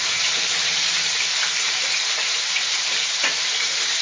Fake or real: fake